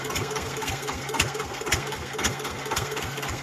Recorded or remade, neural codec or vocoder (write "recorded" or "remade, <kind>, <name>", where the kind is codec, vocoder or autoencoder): remade, codec, SNAC